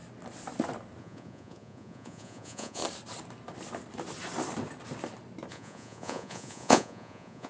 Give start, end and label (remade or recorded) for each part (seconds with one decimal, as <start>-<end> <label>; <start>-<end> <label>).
0.0-1.0 recorded; 1.0-2.8 remade; 2.8-5.5 recorded; 5.5-7.5 remade